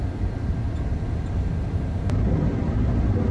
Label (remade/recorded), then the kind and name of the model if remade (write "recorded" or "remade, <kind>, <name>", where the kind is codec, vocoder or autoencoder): recorded